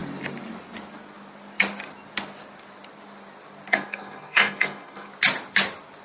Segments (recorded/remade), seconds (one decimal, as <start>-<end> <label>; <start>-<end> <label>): 0.0-3.7 recorded; 3.7-5.1 remade; 5.1-6.0 recorded

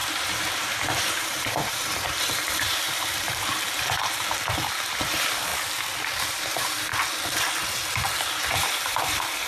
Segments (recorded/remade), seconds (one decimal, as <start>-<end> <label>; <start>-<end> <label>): 0.0-5.5 remade; 5.5-6.3 recorded; 6.3-6.9 remade; 6.9-8.5 recorded; 8.5-9.5 remade

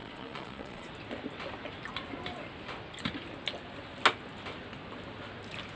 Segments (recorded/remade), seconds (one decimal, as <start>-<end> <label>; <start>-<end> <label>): 0.0-0.9 remade; 0.9-5.8 recorded

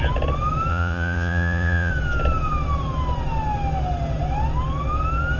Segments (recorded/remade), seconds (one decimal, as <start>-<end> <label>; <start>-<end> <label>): 0.0-0.7 recorded; 0.7-1.9 remade; 1.9-5.4 recorded

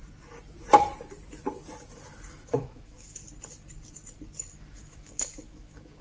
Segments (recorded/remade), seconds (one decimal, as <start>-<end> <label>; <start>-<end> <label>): 0.0-2.3 recorded; 2.3-3.2 remade; 3.2-4.5 recorded; 4.5-6.0 remade

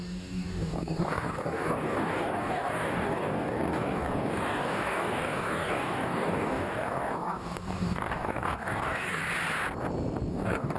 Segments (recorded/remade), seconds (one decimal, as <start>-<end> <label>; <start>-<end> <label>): 0.0-9.2 remade; 9.2-10.3 recorded; 10.3-10.8 remade

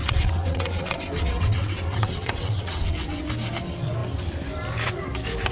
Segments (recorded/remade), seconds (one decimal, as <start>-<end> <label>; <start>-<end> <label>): 0.0-3.3 remade; 3.3-5.5 recorded